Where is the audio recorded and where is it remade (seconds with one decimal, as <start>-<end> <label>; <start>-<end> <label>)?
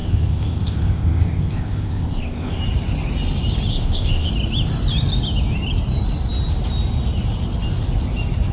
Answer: 0.0-2.6 remade; 2.6-3.7 recorded; 3.7-4.3 remade; 4.3-8.5 recorded